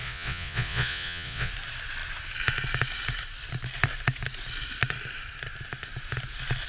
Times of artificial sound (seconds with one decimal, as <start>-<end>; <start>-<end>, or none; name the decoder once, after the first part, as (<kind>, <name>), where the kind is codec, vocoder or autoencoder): 0.0-1.5 (vocoder, Vocos)